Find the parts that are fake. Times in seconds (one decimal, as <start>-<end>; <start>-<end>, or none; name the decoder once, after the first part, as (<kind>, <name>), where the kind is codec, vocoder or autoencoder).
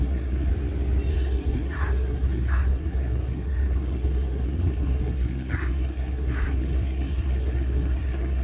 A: 0.0-0.5 (codec, SNAC); 1.1-8.4